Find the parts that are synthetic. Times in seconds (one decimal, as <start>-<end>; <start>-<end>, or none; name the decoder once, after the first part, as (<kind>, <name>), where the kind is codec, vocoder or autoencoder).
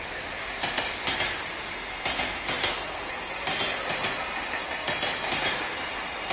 2.6-3.1 (codec, SNAC)